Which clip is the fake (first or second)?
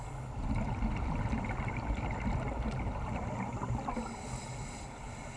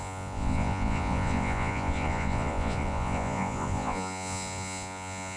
second